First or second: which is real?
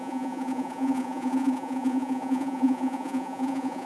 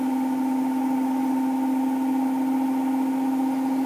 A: second